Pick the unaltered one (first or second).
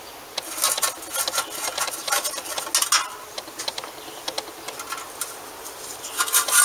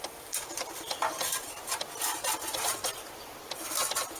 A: first